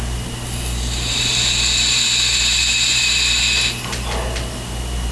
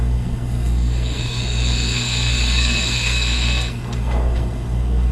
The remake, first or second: second